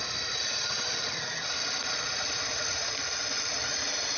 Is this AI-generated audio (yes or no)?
no